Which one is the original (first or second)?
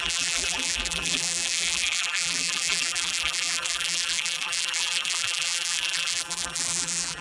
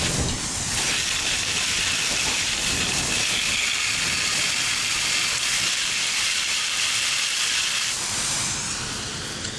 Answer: second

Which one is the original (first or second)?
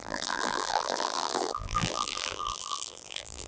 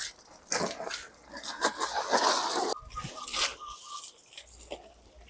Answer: second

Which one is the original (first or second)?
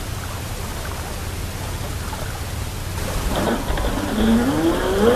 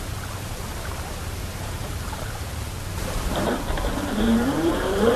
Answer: first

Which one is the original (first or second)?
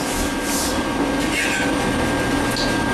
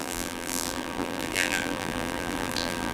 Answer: first